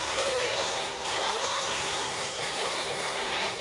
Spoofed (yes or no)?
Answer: yes